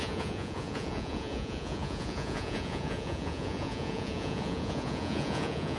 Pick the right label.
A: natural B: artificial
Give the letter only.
B